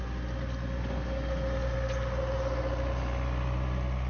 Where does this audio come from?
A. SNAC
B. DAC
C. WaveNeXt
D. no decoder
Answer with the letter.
D